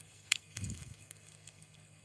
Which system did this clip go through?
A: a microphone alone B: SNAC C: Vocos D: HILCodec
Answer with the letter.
B